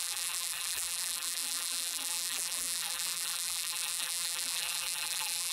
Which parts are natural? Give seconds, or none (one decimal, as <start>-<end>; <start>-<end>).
none